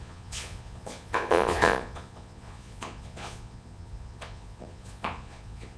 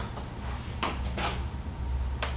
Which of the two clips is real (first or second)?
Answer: second